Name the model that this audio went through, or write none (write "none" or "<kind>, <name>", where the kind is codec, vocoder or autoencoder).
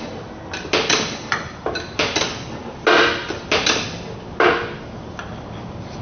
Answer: none